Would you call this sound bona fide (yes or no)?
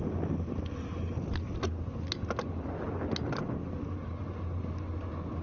yes